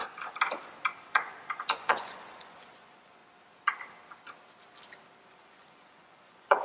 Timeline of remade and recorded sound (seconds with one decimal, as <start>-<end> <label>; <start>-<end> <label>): 0.0-1.0 recorded; 1.0-3.2 remade; 3.2-5.3 recorded; 5.3-6.6 remade